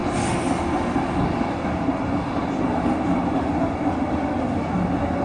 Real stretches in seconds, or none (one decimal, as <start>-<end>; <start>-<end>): 0.0-5.2